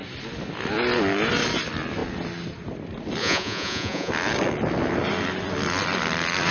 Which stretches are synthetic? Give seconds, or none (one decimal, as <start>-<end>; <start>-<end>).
3.2-4.1